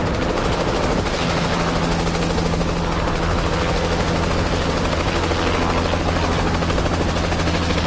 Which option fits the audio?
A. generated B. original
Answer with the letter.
B